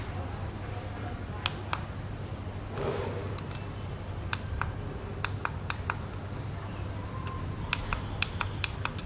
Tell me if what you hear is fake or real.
real